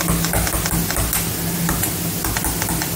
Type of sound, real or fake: real